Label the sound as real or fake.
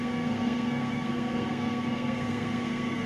fake